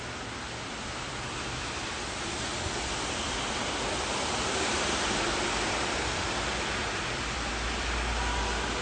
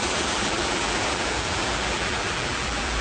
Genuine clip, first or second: first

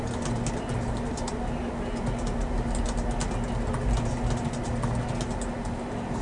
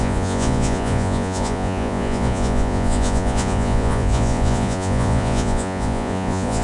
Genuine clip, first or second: first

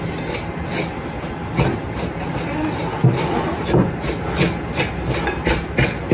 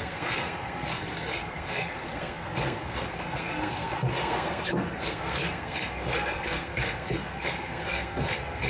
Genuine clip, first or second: first